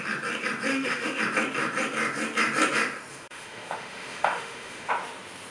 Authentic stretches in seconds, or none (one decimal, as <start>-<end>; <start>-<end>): 0.0-0.7; 1.2-3.1; 4.9-5.5

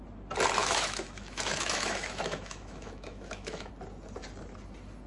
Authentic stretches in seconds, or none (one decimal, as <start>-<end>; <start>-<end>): 0.0-0.6; 3.7-5.1

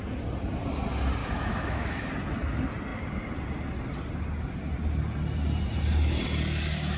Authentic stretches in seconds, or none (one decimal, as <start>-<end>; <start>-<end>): 0.0-1.2; 2.1-7.0

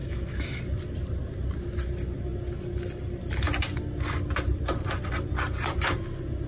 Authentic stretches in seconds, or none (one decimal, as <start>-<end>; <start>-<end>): 0.6-6.5

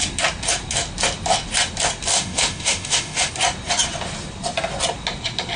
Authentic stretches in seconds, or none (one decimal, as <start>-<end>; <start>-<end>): 0.0-2.1; 3.3-5.6